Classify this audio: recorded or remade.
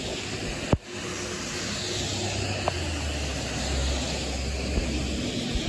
recorded